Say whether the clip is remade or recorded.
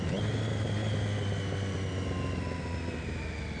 recorded